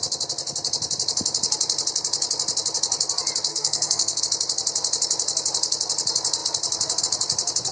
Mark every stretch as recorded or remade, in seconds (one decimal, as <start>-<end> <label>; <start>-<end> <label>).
0.0-3.5 recorded; 3.5-4.2 remade; 4.2-7.7 recorded